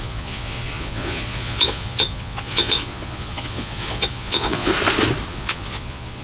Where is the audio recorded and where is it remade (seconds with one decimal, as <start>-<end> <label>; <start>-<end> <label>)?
0.0-4.7 remade; 4.7-5.3 recorded; 5.3-6.2 remade